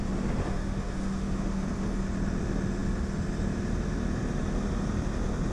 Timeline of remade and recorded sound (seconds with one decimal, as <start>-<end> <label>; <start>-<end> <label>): 0.0-0.4 recorded; 0.4-1.6 remade; 1.6-5.5 recorded